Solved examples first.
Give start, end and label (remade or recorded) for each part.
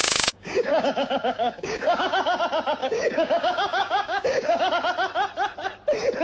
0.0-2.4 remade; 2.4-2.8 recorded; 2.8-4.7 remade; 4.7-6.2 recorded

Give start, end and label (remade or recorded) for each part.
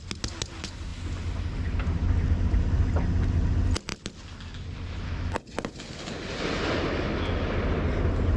0.0-2.0 recorded; 2.0-2.8 remade; 2.8-8.4 recorded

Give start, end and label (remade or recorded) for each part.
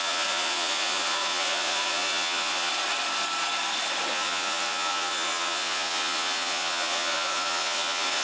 0.0-2.7 remade; 2.7-4.1 recorded; 4.1-8.2 remade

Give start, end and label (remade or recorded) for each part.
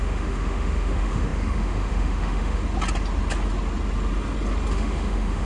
0.0-2.6 remade; 2.6-4.7 recorded; 4.7-5.5 remade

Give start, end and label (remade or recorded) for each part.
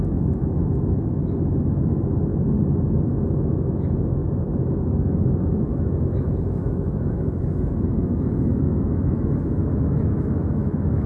0.0-1.2 remade; 1.2-1.7 recorded; 1.7-11.1 remade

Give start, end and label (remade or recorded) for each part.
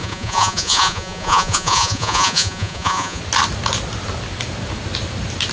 0.0-3.2 remade; 3.2-5.5 recorded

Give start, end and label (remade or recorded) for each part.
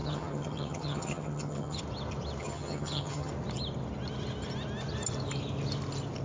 0.0-1.8 remade; 1.8-2.4 recorded; 2.4-3.3 remade; 3.3-6.2 recorded